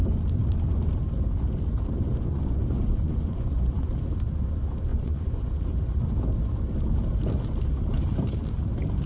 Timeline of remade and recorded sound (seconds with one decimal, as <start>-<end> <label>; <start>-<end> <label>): 0.0-2.1 recorded; 2.1-3.9 remade; 3.9-4.9 recorded; 4.9-5.6 remade; 5.6-9.1 recorded